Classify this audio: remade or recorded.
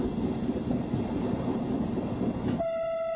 recorded